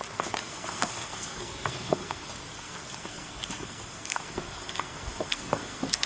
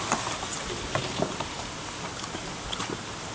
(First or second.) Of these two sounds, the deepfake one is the first